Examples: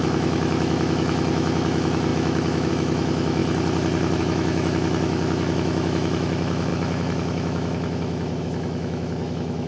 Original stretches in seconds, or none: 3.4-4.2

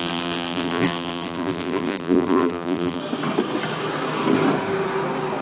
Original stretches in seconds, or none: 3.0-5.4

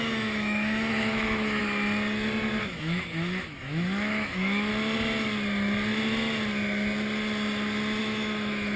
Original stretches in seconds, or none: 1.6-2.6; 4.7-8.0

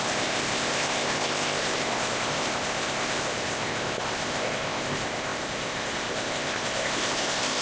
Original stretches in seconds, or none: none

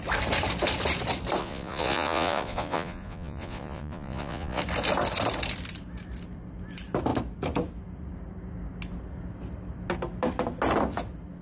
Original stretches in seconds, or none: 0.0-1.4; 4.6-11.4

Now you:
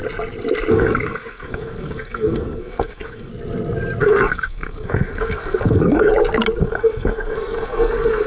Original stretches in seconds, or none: 0.0-0.7; 3.3-4.0; 6.1-6.6

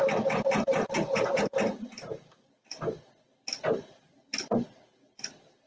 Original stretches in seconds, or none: 0.0-5.7